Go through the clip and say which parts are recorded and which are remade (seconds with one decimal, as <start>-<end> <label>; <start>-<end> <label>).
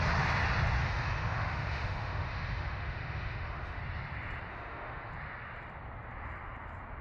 0.0-0.8 recorded; 0.8-3.8 remade; 3.8-4.5 recorded; 4.5-5.1 remade; 5.1-7.0 recorded